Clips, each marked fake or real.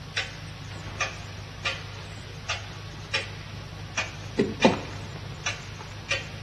real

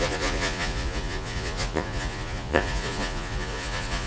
fake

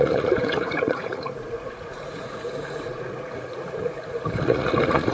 fake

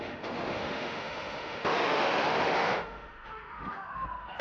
fake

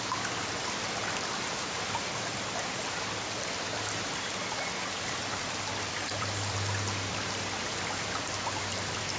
fake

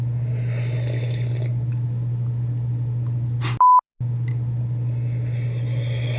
real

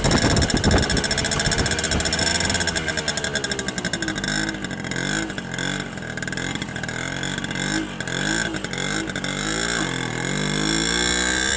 real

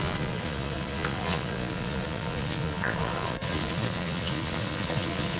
fake